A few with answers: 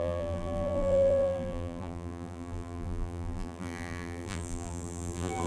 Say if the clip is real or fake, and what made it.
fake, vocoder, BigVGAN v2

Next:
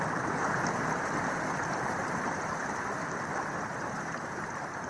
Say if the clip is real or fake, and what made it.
real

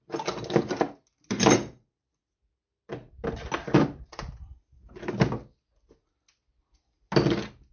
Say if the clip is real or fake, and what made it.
real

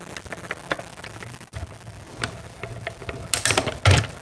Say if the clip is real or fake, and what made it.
real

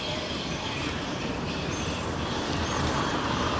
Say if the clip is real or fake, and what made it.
real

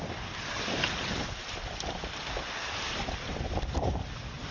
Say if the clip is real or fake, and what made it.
fake, vocoder, BigVGAN v2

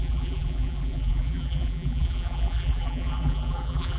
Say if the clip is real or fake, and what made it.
fake, vocoder, BigVGAN v2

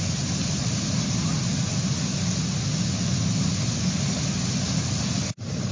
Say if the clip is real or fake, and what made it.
real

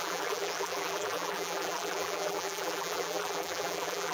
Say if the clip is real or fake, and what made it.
fake, vocoder, BigVGAN v2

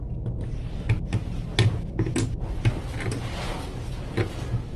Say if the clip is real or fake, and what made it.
real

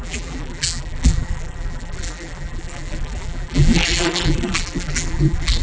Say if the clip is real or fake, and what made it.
fake, vocoder, BigVGAN v2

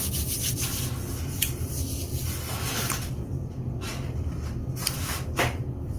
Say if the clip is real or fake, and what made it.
fake, vocoder, BigVGAN v2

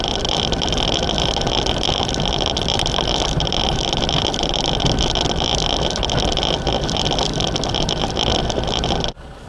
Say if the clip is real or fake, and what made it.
fake, vocoder, BigVGAN v2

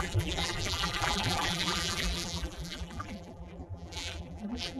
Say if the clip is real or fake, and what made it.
fake, vocoder, BigVGAN v2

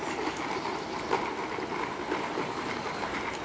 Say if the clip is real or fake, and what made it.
real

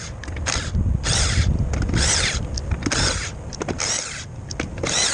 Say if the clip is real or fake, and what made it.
real